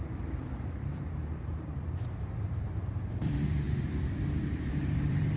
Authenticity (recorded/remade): remade